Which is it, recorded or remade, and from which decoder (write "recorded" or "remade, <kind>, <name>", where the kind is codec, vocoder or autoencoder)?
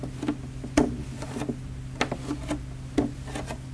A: recorded